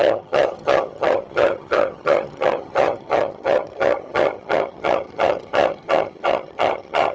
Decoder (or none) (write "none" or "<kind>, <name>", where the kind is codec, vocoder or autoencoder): vocoder, HiFi-GAN